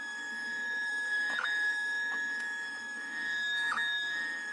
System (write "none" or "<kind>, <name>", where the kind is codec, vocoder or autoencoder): autoencoder, DAC-VAE